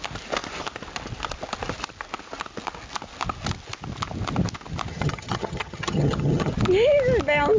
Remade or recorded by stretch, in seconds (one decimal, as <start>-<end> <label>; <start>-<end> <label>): 0.0-4.9 recorded; 4.9-6.5 remade; 6.5-7.6 recorded